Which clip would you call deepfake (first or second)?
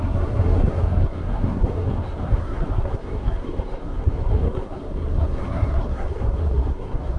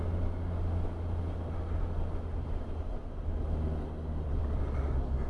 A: first